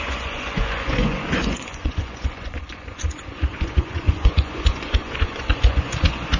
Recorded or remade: remade